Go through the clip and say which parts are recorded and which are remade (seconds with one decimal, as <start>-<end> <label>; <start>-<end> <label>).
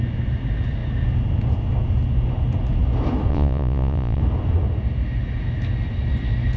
0.0-3.3 recorded; 3.3-4.2 remade; 4.2-6.6 recorded